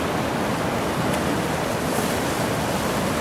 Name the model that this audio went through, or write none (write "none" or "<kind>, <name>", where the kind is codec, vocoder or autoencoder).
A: none